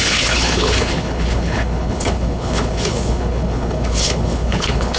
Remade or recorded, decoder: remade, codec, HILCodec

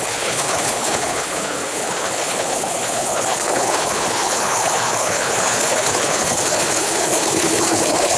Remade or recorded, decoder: remade, codec, HILCodec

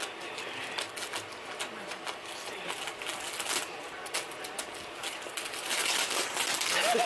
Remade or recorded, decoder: recorded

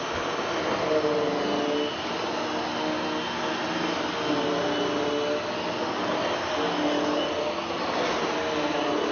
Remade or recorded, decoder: recorded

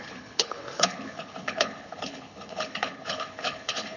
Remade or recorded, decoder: remade, codec, HILCodec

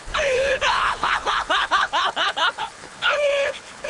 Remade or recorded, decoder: remade, codec, HILCodec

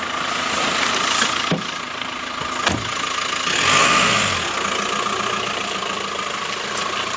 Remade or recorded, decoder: recorded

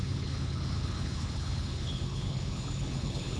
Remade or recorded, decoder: remade, codec, HILCodec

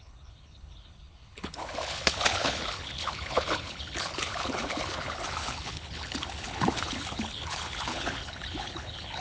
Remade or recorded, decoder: remade, codec, HILCodec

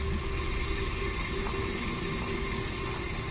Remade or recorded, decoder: recorded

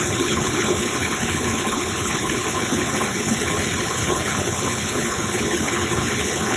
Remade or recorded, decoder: remade, codec, HILCodec